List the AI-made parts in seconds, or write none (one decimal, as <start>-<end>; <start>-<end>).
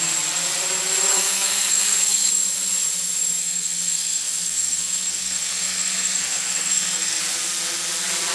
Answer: 1.1-2.3; 3.4-7.2